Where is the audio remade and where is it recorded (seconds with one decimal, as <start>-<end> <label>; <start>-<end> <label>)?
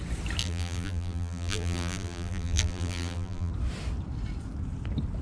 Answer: 0.0-0.4 recorded; 0.4-3.5 remade; 3.5-5.2 recorded